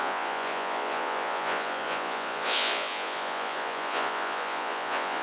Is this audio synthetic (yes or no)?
yes